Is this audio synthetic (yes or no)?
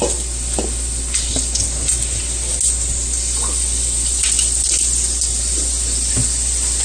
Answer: no